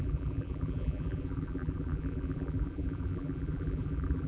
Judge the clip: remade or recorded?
remade